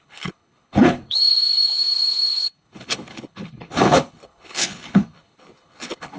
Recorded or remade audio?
remade